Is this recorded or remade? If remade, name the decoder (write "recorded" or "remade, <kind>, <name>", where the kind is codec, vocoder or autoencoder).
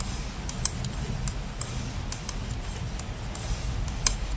recorded